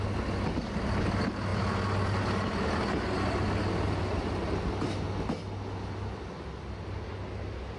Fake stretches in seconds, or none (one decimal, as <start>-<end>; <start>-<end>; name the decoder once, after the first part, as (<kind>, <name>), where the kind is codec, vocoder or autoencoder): none